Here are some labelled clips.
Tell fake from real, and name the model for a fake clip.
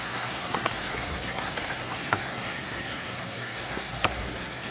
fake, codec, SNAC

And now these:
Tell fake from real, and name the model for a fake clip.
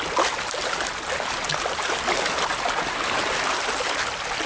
real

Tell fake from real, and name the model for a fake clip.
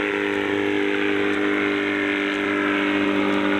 real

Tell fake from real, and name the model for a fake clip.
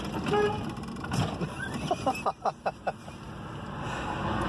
real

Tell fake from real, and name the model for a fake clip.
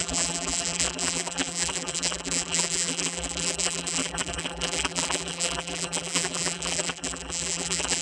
fake, vocoder, BigVGAN v2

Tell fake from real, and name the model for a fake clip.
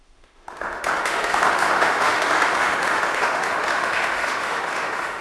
fake, autoencoder, DAC-VAE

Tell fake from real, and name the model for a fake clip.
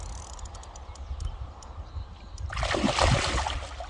real